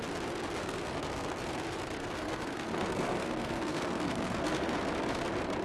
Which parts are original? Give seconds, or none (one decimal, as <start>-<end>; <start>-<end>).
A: 0.0-0.6; 1.4-2.0; 4.7-5.6